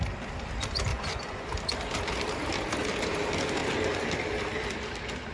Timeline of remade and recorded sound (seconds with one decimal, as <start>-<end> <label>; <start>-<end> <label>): 0.0-0.9 recorded; 0.9-1.5 remade; 1.5-5.3 recorded

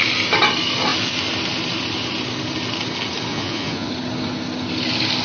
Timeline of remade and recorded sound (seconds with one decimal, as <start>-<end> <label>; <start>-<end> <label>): 0.0-3.3 recorded; 3.3-3.9 remade; 3.9-5.2 recorded

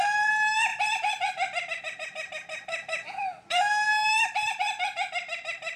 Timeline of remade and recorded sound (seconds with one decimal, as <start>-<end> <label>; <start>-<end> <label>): 0.0-0.7 recorded; 0.7-3.6 remade; 3.6-4.1 recorded; 4.1-5.1 remade; 5.1-5.8 recorded

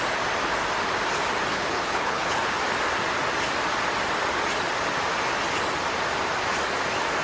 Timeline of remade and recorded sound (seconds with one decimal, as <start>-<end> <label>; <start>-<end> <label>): 0.0-1.5 recorded; 1.5-2.5 remade; 2.5-7.2 recorded

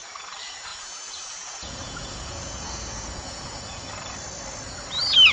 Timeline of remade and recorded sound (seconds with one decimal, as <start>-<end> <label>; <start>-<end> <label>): 0.0-0.7 recorded; 0.7-3.9 remade; 3.9-5.3 recorded

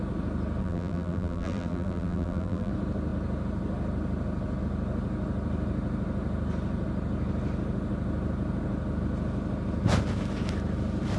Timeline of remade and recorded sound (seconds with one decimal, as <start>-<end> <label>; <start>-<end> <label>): 0.0-0.6 recorded; 0.6-2.7 remade; 2.7-11.2 recorded